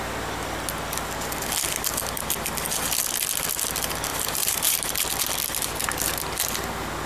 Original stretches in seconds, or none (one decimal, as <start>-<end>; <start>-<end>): 0.0-4.1; 4.9-7.1